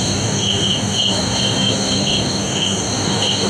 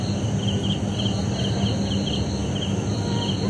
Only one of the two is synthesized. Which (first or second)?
first